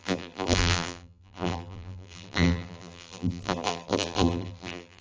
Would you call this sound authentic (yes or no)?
no